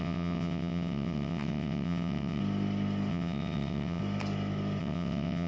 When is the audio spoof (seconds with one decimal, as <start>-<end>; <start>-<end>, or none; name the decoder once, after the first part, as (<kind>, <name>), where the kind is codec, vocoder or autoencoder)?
0.0-2.4 (vocoder, WaveNeXt); 3.1-4.0; 4.8-5.5